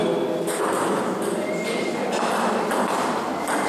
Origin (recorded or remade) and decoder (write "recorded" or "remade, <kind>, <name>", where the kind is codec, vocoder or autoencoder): recorded